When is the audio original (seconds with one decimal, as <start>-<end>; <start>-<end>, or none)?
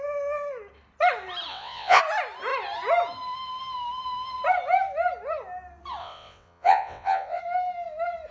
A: 0.0-1.5; 2.0-6.0; 7.4-8.3